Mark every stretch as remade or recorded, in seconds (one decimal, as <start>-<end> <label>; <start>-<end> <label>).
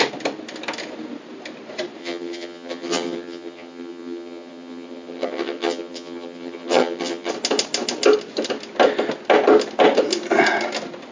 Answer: 0.0-2.0 recorded; 2.0-7.3 remade; 7.3-11.1 recorded